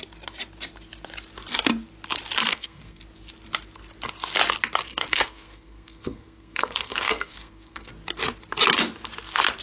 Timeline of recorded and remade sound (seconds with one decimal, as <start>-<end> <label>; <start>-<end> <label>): 0.0-2.4 recorded; 2.4-3.0 remade; 3.0-4.9 recorded; 4.9-7.9 remade; 7.9-9.6 recorded